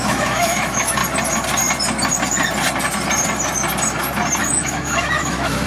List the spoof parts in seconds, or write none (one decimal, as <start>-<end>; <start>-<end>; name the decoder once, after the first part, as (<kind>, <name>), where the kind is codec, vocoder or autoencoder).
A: 0.0-1.0 (autoencoder, DAC-VAE); 4.4-5.7